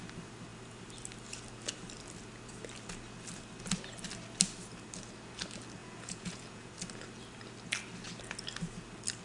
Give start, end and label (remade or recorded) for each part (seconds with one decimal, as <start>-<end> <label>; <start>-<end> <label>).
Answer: 0.0-5.8 recorded; 5.8-6.7 remade; 6.7-9.2 recorded